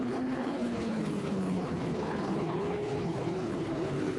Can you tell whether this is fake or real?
fake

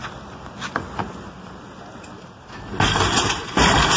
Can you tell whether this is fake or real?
real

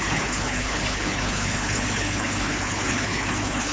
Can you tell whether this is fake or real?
fake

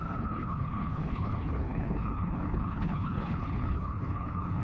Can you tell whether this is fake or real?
fake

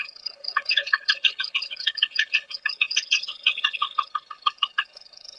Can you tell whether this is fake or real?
fake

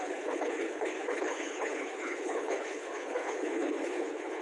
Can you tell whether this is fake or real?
fake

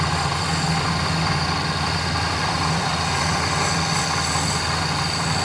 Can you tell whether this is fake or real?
real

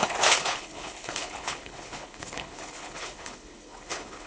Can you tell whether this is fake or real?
fake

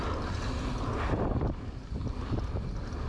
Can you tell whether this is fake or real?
real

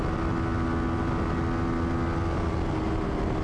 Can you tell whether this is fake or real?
real